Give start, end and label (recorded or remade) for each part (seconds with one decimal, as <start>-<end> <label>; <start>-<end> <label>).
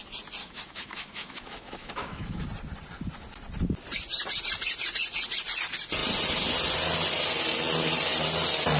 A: 0.0-0.4 recorded; 0.4-2.4 remade; 2.4-8.8 recorded